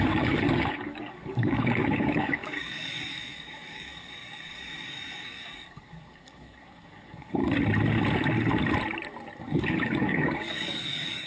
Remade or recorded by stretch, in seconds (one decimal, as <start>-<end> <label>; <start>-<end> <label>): 0.0-7.4 remade; 7.4-9.4 recorded; 9.4-11.3 remade